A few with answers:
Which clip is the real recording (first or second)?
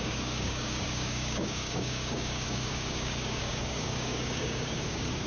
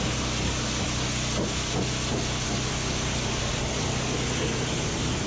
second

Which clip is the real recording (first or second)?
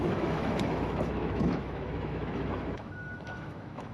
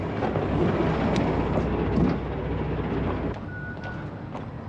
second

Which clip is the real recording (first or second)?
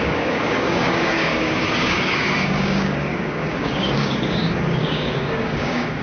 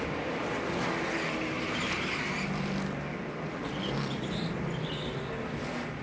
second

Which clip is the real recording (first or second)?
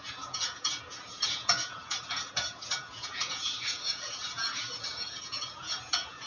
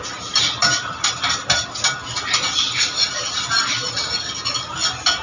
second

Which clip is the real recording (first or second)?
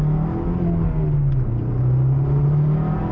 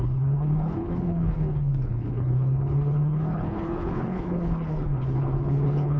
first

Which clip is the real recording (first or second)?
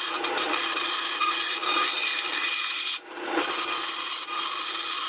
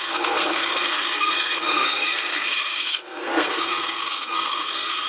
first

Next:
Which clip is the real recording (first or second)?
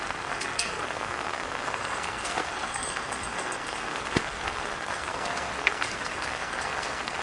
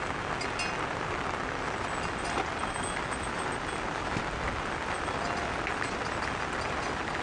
second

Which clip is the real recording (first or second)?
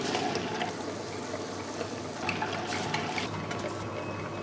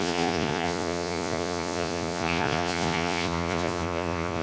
first